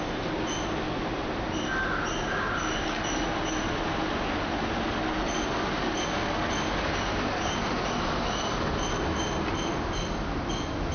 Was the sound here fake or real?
real